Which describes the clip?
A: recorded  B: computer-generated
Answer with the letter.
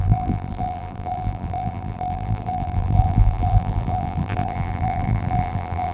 B